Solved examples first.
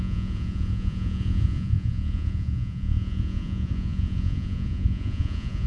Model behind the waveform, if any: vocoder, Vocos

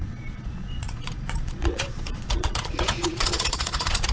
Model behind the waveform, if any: vocoder, Vocos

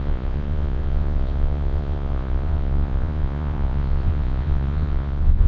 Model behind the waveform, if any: vocoder, Vocos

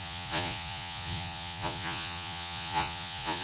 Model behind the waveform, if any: vocoder, Vocos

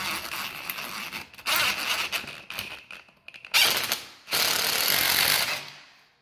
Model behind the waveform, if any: none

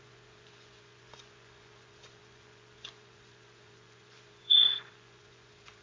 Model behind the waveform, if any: vocoder, Vocos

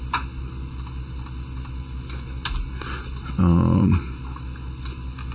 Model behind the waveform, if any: none